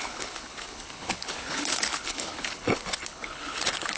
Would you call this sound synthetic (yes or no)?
yes